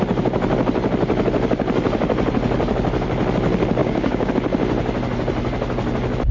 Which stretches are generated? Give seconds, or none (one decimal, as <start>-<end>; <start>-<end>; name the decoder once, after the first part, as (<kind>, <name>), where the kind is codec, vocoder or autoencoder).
3.8-4.3 (codec, DAC)